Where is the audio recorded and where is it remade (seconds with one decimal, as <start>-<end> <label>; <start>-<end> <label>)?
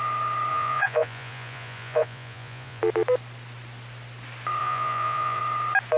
0.0-0.5 recorded; 0.5-2.8 remade; 2.8-4.6 recorded; 4.6-5.4 remade; 5.4-6.0 recorded